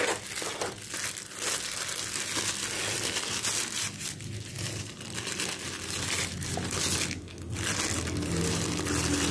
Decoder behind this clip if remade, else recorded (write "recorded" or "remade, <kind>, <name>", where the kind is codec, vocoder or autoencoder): recorded